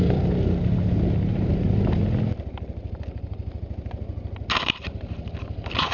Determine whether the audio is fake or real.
real